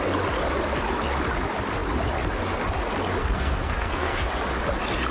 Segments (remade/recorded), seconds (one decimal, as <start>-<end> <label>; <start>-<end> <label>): 0.0-3.2 recorded; 3.2-4.3 remade; 4.3-5.1 recorded